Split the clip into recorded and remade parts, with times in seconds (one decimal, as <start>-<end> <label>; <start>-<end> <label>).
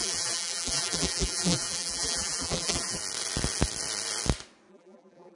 0.0-3.0 remade; 3.0-4.7 recorded; 4.7-5.3 remade